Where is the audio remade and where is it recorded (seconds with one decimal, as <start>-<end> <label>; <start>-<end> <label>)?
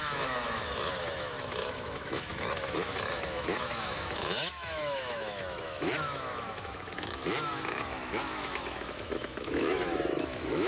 0.0-10.7 remade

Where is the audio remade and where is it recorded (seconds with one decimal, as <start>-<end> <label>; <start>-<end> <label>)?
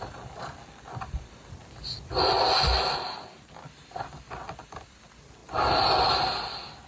0.0-6.9 recorded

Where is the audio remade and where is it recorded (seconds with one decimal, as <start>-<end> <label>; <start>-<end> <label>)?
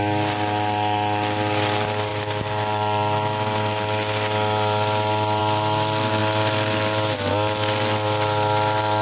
0.0-9.0 recorded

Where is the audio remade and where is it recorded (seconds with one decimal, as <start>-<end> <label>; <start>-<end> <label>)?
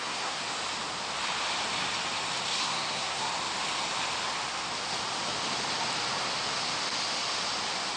0.0-0.4 remade; 0.4-2.6 recorded; 2.6-3.3 remade; 3.3-8.0 recorded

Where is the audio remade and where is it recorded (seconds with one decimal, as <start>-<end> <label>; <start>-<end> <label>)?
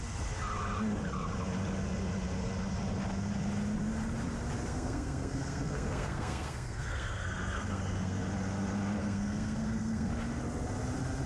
0.0-4.7 recorded; 4.7-8.2 remade; 8.2-9.0 recorded; 9.0-10.1 remade; 10.1-11.3 recorded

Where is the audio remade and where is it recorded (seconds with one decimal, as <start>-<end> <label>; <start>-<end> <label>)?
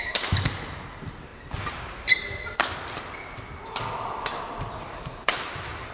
0.0-1.3 remade; 1.3-4.8 recorded; 4.8-5.9 remade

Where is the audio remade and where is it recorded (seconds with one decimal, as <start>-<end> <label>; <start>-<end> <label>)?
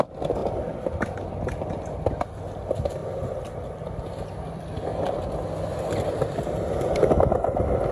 0.0-7.9 recorded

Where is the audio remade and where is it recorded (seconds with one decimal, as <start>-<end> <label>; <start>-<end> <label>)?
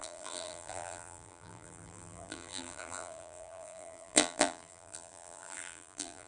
0.0-6.3 remade